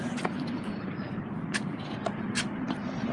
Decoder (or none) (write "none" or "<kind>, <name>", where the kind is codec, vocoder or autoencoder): vocoder, BigVGAN v2